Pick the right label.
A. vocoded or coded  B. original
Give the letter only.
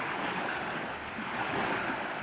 A